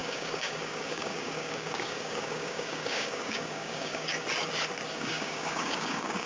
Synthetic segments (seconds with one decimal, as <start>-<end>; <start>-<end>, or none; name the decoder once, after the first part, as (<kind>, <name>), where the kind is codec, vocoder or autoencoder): 0.0-4.1 (codec, DAC); 4.9-6.3